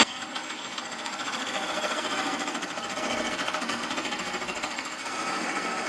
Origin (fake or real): fake